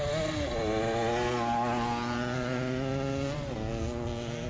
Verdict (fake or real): real